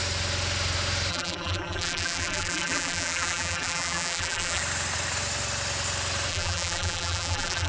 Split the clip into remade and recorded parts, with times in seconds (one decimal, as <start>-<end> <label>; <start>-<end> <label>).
0.0-1.1 recorded; 1.1-4.6 remade; 4.6-6.3 recorded; 6.3-7.7 remade